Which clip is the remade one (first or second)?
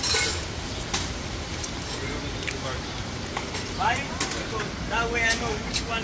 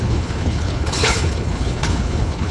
second